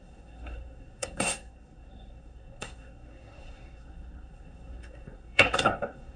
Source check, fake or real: fake